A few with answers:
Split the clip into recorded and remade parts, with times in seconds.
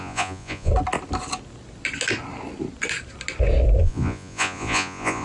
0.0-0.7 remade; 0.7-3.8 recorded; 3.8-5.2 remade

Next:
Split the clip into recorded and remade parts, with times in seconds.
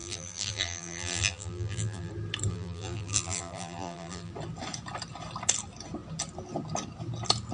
0.0-2.1 remade; 2.1-2.5 recorded; 2.5-4.3 remade; 4.3-7.5 recorded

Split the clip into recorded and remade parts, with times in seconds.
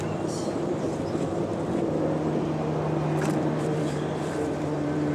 0.0-1.5 remade; 1.5-3.4 recorded; 3.4-5.1 remade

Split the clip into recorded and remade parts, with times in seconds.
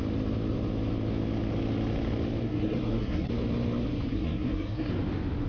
0.0-2.4 recorded; 2.4-3.3 remade; 3.3-4.1 recorded; 4.1-4.9 remade; 4.9-5.5 recorded